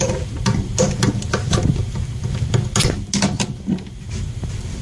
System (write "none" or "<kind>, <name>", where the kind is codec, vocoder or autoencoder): none